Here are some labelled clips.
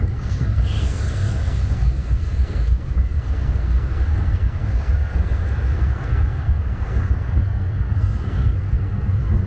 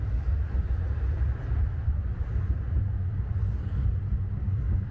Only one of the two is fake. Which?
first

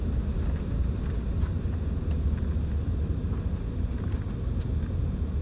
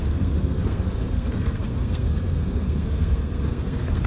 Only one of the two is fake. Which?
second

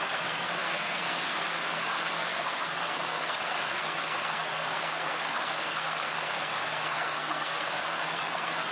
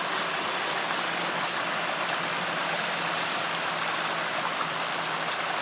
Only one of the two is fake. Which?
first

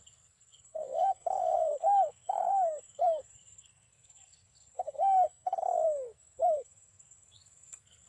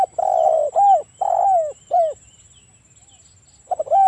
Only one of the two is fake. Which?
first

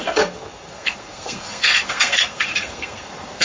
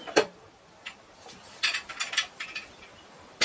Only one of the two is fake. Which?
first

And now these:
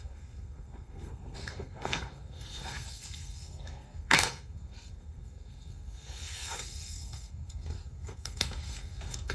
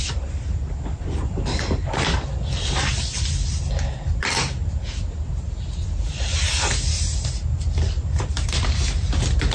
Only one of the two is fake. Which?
first